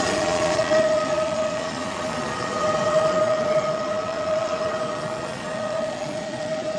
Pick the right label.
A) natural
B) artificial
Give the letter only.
B